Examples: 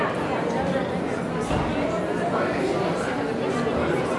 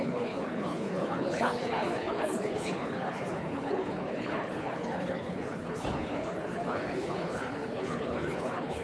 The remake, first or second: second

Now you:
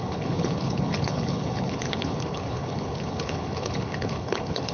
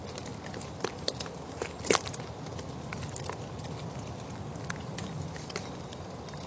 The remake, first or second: first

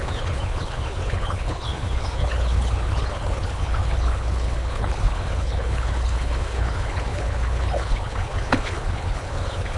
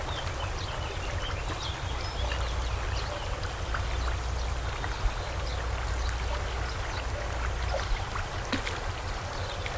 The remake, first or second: first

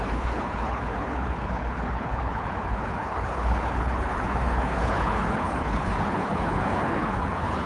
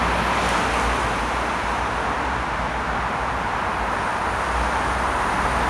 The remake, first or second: first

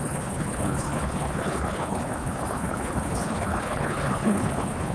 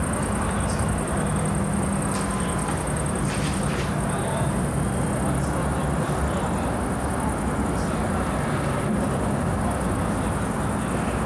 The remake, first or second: first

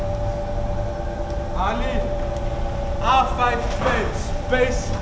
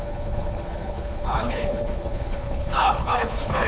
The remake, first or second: second